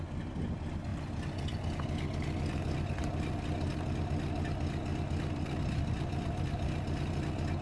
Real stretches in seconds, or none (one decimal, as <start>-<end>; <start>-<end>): 0.0-7.6